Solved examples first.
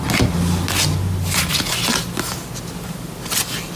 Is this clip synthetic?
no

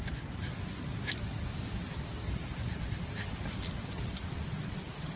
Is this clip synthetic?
no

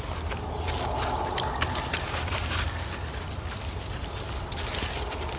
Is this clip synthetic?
no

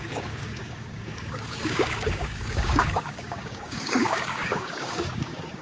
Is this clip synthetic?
yes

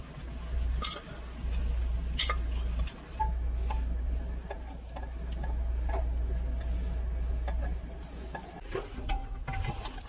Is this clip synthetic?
no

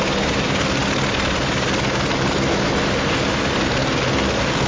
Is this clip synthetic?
no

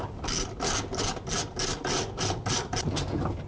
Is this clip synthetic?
no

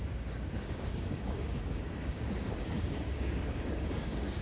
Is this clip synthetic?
yes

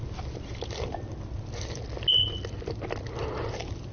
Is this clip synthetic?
no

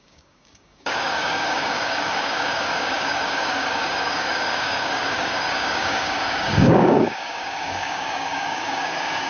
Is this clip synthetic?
yes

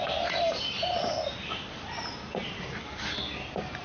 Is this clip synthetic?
no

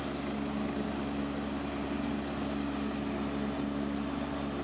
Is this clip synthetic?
no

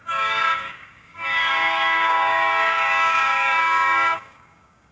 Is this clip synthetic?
yes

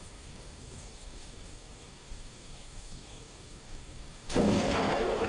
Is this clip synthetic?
yes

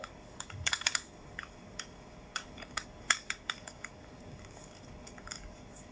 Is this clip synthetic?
yes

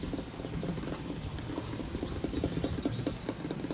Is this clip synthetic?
no